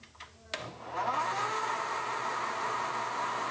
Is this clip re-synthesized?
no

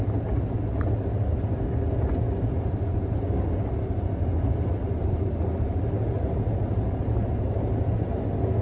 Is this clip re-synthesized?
no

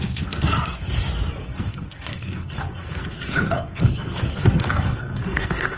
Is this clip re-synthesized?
yes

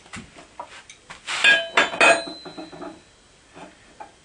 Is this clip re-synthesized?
no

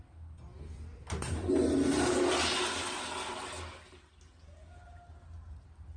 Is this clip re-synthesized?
no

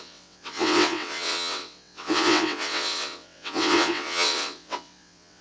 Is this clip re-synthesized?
yes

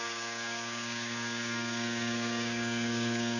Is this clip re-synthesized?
yes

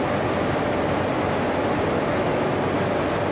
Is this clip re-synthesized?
no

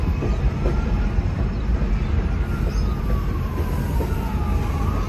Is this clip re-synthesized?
no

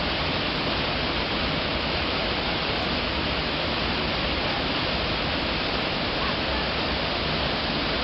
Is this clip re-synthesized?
no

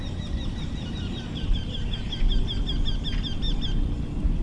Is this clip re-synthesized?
no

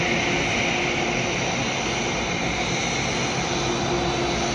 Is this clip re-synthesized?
no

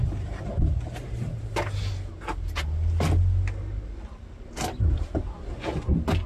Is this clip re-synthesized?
no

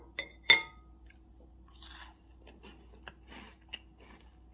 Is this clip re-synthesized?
no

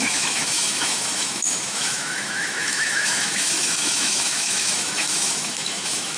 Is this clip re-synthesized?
yes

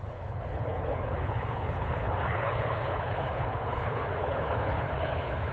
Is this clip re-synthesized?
yes